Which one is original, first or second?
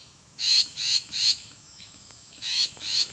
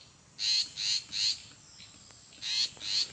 second